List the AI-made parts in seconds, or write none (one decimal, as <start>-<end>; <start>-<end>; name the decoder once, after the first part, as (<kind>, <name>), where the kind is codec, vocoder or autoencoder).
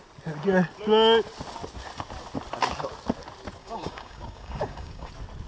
3.6-5.1 (codec, DAC)